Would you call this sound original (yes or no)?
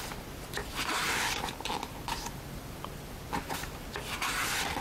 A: yes